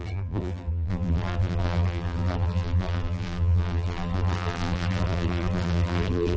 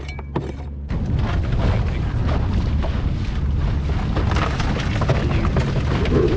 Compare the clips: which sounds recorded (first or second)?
second